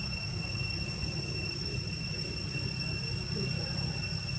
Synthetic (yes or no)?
no